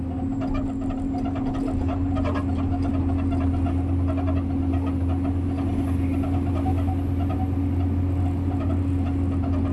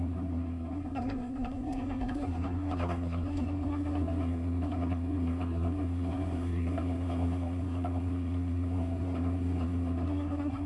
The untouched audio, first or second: first